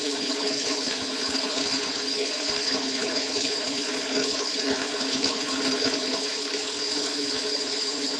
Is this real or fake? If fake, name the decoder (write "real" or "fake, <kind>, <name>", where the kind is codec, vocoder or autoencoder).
fake, codec, HILCodec